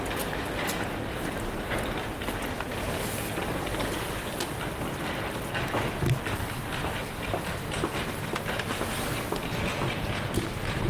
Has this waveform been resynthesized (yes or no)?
no